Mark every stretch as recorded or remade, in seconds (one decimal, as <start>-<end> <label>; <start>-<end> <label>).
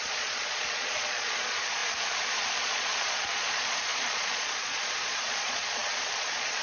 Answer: 0.0-1.8 remade; 1.8-2.6 recorded; 2.6-6.6 remade